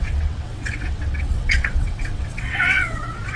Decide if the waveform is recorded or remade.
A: remade